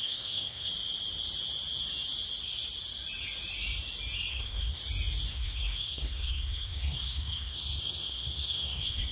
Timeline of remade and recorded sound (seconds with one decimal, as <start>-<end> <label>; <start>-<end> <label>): 0.0-0.7 remade; 0.7-4.3 recorded; 4.3-4.8 remade; 4.8-5.3 recorded; 5.3-9.1 remade